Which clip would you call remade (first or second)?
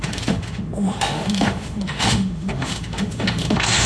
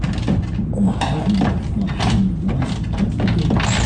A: first